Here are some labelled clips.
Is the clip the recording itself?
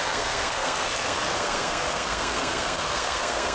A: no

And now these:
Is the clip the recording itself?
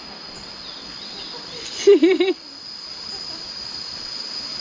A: yes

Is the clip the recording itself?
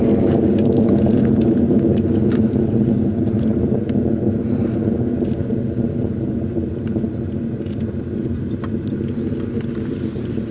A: yes